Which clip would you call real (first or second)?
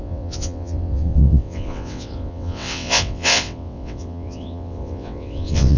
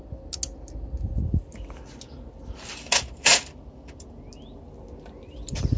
second